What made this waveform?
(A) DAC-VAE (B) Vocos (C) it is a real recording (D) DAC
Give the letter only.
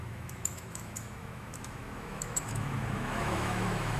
A